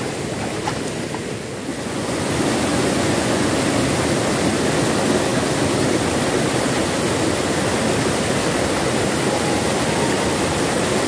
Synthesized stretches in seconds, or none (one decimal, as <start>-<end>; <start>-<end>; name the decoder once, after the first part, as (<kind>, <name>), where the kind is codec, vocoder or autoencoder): 1.7-2.3 (vocoder, Vocos); 2.7-3.5